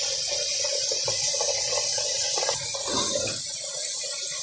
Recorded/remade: recorded